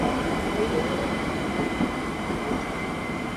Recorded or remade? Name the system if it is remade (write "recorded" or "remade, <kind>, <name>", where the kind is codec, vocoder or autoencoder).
remade, vocoder, BigVGAN v2